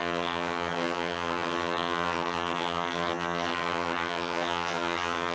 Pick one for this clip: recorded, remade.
remade